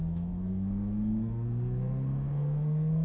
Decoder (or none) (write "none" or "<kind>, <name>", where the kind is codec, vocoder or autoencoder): codec, SNAC